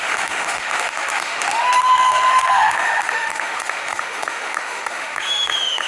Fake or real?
fake